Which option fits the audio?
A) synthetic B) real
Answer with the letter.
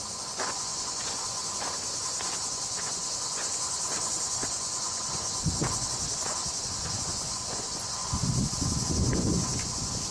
A